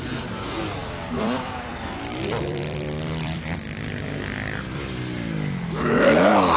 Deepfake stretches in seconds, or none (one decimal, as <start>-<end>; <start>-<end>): 0.8-3.4